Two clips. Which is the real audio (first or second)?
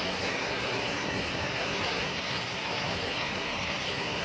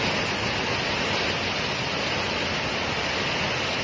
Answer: second